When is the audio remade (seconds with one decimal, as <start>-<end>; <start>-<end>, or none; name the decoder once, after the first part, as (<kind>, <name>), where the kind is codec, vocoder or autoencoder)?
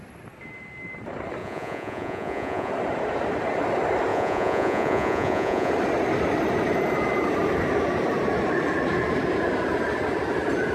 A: 1.4-2.7 (vocoder, Vocos); 4.1-5.7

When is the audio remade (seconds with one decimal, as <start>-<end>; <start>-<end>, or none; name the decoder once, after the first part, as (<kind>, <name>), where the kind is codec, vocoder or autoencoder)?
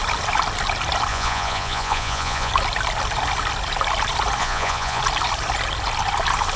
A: 1.1-2.5 (vocoder, Vocos); 4.4-5.0